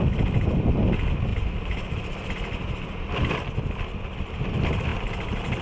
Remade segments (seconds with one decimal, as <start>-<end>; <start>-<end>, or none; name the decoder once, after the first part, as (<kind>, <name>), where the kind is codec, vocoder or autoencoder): 1.3-4.5 (vocoder, BigVGAN v2)